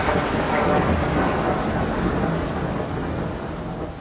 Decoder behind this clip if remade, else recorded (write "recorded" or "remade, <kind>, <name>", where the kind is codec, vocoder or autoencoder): recorded